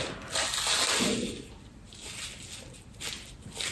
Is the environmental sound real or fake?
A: real